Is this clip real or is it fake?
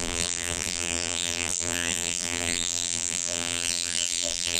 fake